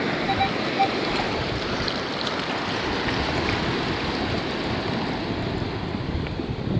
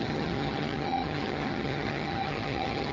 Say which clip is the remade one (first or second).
second